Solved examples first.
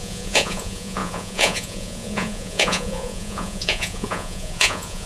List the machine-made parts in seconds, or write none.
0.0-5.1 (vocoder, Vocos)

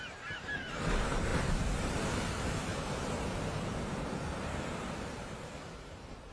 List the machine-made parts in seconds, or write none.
0.0-2.7 (vocoder, BigVGAN v2); 5.7-6.3

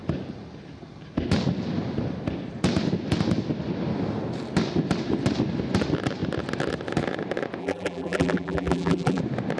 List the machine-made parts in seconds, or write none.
7.6-9.2 (vocoder, BigVGAN v2)

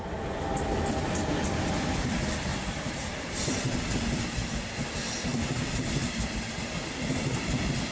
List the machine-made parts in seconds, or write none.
2.5-3.4 (vocoder, BigVGAN v2)

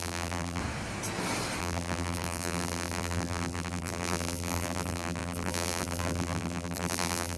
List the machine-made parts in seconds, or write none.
0.0-0.6 (vocoder, BigVGAN v2); 1.6-7.4

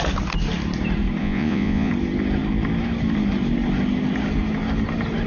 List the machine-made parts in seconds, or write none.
1.2-1.9 (vocoder, Vocos)

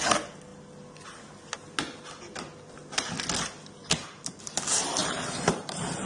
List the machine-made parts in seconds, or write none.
3.8-4.4 (vocoder, BigVGAN v2); 5.0-6.1

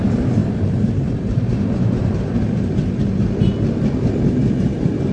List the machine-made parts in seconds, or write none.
0.0-2.8 (vocoder, BigVGAN v2); 4.5-5.1